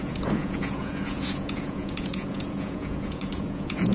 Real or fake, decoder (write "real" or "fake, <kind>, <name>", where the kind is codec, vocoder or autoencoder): fake, vocoder, Vocos